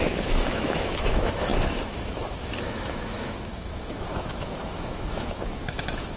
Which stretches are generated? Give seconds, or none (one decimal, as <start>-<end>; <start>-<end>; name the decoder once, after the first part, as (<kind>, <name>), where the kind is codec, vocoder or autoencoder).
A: 0.0-6.2 (autoencoder, DAC-VAE)